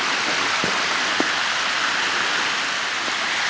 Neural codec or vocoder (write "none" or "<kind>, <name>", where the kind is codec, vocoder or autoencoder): none